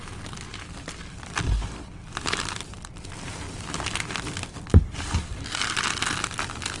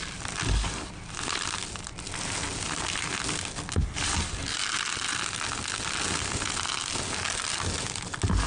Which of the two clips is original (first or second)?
second